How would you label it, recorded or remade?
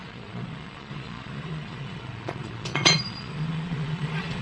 remade